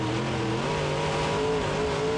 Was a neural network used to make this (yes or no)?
no